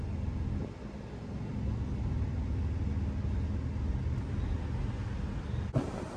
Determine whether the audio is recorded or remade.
recorded